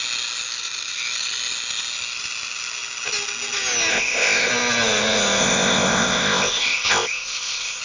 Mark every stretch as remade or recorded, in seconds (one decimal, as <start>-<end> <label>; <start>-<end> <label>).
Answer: 0.0-3.9 recorded; 3.9-4.5 remade; 4.5-5.4 recorded; 5.4-7.8 remade